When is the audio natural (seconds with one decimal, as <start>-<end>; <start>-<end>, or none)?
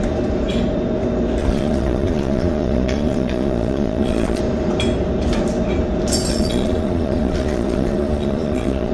0.0-1.4; 4.4-6.3